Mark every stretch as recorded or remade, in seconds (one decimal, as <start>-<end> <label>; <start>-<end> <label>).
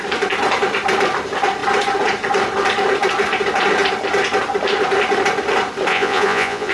0.0-5.9 recorded; 5.9-6.7 remade